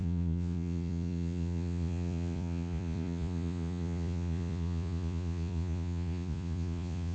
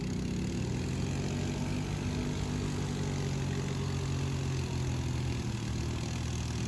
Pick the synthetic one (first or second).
first